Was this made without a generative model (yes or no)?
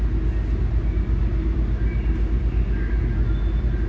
yes